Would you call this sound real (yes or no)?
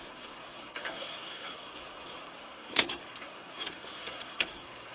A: no